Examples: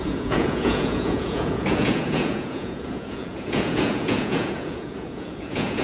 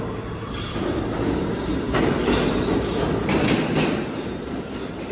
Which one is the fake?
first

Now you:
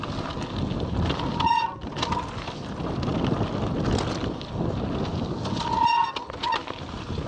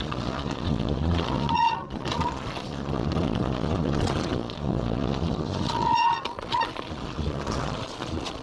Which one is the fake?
second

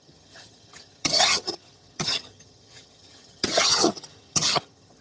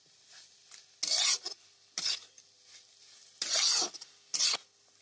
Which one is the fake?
first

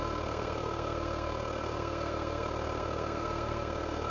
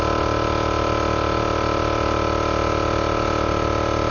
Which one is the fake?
first